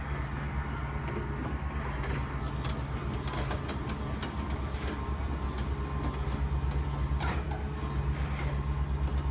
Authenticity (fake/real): real